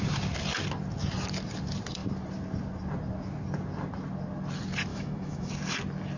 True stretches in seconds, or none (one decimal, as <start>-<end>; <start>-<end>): 0.0-4.9; 5.5-6.2